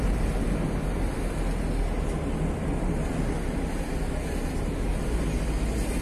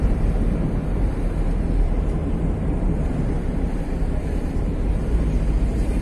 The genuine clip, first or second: first